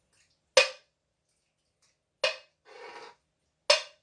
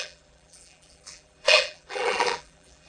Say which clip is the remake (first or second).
second